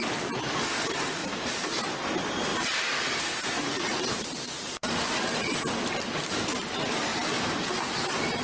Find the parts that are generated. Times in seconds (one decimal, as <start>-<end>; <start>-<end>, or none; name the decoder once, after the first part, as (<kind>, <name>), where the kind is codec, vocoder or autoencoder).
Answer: 1.2-1.8 (vocoder, BigVGAN v2); 2.5-5.7; 7.1-7.7